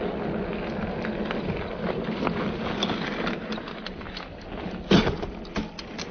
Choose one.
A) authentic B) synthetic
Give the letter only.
A